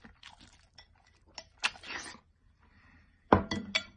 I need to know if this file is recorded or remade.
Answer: recorded